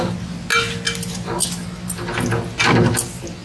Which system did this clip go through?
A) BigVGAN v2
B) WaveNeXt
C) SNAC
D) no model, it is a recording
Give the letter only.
D